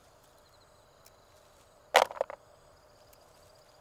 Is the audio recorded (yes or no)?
yes